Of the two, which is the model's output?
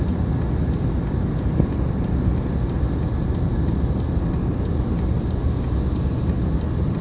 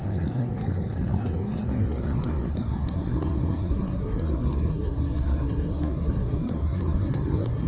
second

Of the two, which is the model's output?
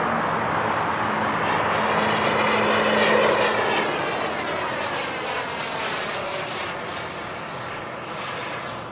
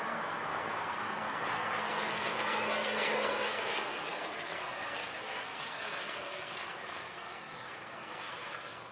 second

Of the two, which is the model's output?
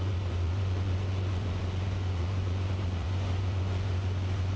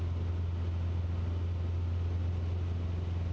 first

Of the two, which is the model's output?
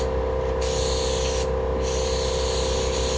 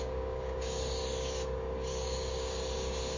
second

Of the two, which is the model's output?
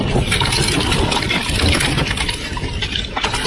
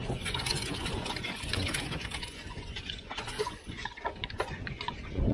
second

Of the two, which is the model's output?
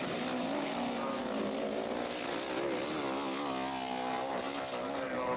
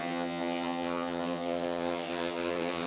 second